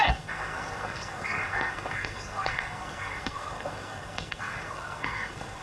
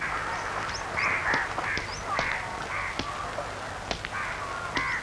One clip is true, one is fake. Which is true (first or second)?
second